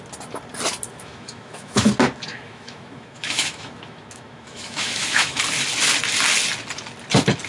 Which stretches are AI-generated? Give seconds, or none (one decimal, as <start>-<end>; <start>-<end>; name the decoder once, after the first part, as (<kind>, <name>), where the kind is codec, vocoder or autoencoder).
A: 0.9-1.9 (autoencoder, DAC-VAE); 2.3-5.4